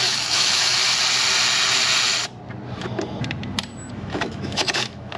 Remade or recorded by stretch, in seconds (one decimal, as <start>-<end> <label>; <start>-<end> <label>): 0.0-0.8 remade; 0.8-3.9 recorded; 3.9-5.2 remade